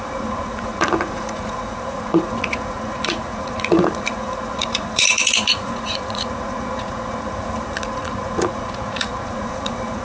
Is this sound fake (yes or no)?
yes